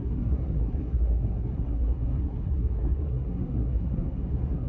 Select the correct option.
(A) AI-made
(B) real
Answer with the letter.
A